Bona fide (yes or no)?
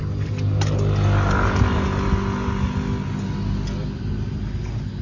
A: yes